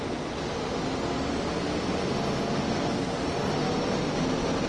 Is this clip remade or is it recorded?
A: recorded